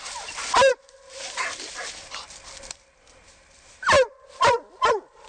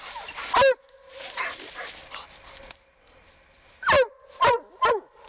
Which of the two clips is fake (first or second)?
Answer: first